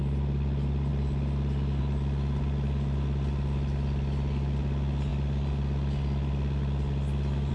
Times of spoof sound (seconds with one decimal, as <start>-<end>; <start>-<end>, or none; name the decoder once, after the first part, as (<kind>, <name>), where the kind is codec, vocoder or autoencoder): none